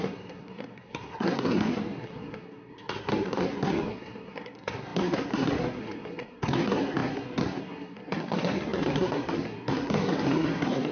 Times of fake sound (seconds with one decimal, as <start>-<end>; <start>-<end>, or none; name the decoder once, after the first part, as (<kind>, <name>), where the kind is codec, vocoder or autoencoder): 0.0-10.9 (codec, SNAC)